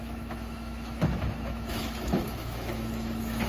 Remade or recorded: remade